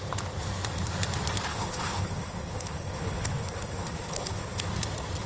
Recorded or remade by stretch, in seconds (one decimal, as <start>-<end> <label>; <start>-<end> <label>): 0.0-1.5 recorded; 1.5-4.7 remade; 4.7-5.3 recorded